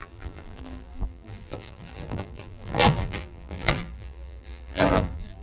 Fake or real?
fake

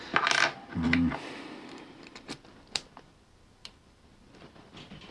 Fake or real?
fake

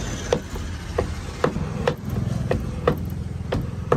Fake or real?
real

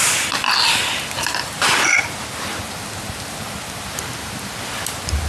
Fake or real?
real